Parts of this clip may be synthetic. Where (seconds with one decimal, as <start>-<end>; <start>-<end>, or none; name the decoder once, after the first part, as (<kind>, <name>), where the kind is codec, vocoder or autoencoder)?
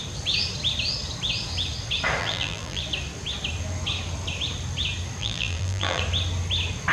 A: 2.2-2.8 (vocoder, BigVGAN v2); 5.2-6.0